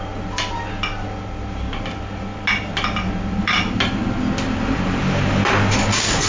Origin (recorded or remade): recorded